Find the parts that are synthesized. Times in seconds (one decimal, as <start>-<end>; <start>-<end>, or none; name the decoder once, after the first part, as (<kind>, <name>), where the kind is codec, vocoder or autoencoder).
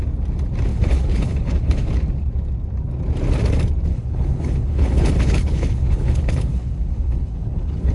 0.7-1.9 (codec, HILCodec); 3.9-7.9